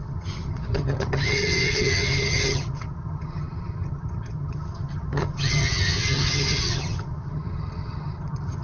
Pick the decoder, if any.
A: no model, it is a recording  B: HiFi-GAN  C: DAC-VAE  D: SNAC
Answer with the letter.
B